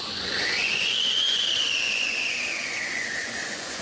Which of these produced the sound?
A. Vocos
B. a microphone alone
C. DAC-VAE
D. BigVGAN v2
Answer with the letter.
A